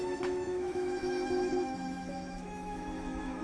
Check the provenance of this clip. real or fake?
fake